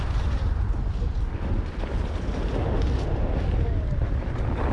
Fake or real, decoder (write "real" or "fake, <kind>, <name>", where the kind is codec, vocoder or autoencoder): fake, vocoder, BigVGAN v2